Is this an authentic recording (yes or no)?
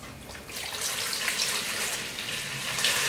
yes